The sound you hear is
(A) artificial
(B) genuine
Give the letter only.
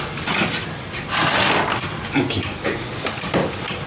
A